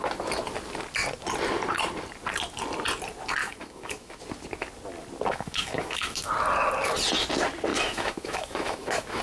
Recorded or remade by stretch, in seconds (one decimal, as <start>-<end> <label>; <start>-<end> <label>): 0.0-3.4 recorded; 3.4-4.2 remade; 4.2-5.3 recorded; 5.3-6.3 remade; 6.3-7.7 recorded; 7.7-9.2 remade